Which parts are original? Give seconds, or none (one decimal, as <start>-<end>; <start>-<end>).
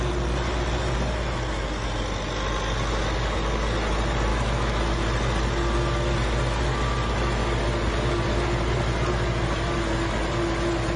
0.0-4.3; 4.8-11.0